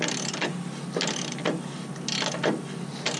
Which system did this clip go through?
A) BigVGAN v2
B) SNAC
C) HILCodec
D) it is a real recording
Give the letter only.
D